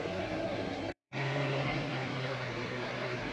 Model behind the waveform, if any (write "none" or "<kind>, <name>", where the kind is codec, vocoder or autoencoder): codec, SNAC